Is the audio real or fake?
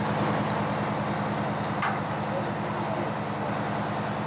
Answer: fake